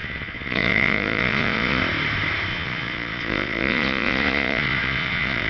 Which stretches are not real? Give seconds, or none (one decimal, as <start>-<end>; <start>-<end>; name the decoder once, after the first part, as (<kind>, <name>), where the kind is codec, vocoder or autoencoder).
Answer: 0.0-1.8 (vocoder, Vocos); 2.5-5.5